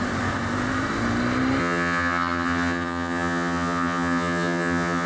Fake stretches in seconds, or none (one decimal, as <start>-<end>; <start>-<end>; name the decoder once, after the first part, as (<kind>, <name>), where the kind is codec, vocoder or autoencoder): 1.6-5.1 (vocoder, HiFi-GAN)